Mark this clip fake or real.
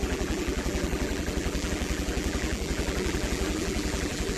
fake